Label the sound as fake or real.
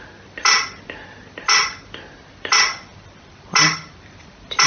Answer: real